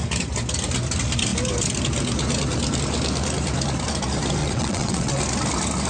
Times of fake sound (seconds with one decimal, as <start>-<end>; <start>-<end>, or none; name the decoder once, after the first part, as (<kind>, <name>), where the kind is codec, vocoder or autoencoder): 4.4-5.2 (vocoder, WaveNeXt)